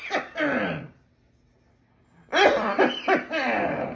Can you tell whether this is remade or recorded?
recorded